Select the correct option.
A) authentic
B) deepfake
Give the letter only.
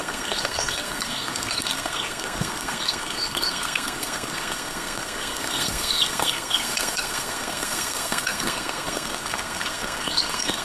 B